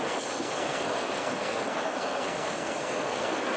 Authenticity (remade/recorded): remade